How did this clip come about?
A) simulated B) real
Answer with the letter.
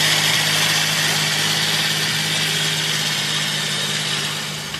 B